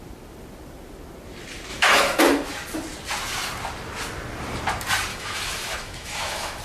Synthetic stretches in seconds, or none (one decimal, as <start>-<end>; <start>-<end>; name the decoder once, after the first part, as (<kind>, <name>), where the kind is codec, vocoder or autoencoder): 1.7-2.2 (autoencoder, DAC-VAE); 5.1-6.6